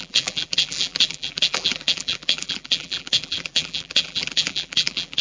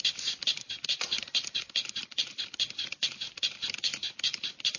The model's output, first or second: first